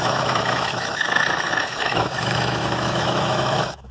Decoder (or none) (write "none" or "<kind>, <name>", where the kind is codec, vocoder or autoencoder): autoencoder, DAC-VAE